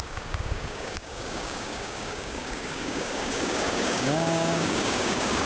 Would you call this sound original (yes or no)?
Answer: no